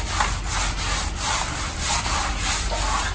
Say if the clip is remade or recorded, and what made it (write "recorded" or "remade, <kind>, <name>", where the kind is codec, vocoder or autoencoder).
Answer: recorded